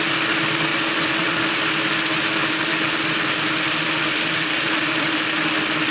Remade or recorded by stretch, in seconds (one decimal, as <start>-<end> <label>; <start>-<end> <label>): 0.0-0.7 recorded; 0.7-1.7 remade; 1.7-2.4 recorded; 2.4-5.1 remade; 5.1-5.9 recorded